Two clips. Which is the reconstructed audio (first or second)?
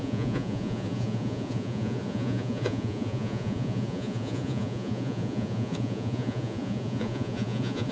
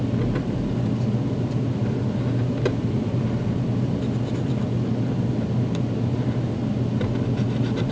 first